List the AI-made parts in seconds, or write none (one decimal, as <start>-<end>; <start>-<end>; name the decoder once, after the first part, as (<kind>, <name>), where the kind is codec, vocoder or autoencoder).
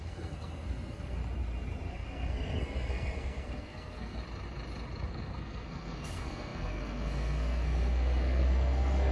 0.0-1.2 (codec, SNAC); 1.9-4.2; 5.1-9.1